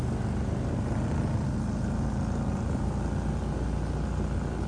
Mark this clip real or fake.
real